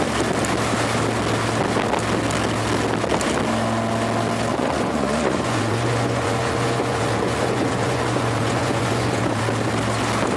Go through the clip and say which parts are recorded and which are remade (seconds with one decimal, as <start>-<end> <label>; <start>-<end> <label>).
0.0-4.5 recorded; 4.5-9.4 remade; 9.4-10.4 recorded